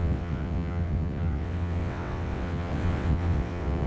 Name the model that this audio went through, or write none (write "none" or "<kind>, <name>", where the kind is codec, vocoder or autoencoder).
vocoder, WaveNeXt